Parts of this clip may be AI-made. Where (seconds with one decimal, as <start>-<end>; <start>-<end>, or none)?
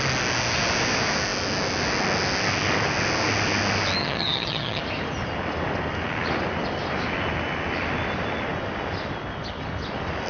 4.0-4.8